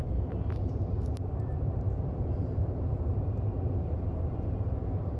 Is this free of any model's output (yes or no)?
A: no